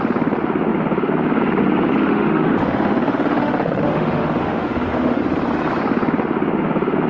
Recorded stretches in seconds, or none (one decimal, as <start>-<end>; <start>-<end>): 0.0-2.1; 5.2-7.1